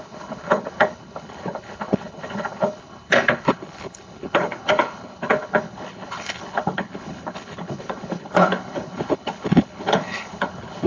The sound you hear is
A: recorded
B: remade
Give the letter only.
B